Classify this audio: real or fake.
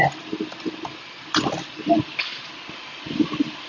real